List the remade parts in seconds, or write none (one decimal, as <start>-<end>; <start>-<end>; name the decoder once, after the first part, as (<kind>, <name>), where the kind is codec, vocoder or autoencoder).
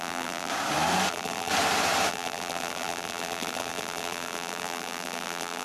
0.0-0.5 (vocoder, BigVGAN v2); 1.1-1.5; 2.1-5.6